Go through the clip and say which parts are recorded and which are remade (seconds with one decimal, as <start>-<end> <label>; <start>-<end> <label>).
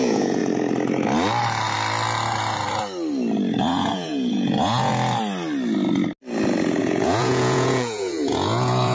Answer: 0.0-0.4 remade; 0.4-3.6 recorded; 3.6-4.9 remade; 4.9-6.8 recorded; 6.8-8.9 remade